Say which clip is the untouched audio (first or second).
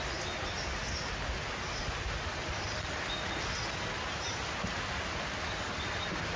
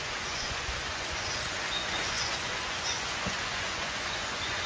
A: first